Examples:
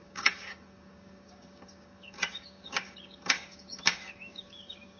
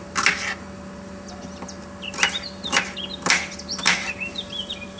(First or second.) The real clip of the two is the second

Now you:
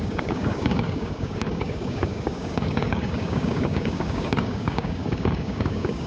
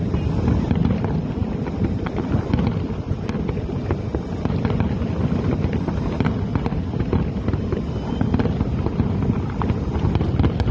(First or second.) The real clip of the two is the second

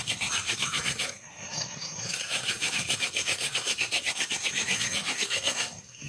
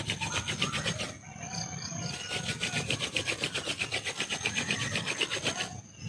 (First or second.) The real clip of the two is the second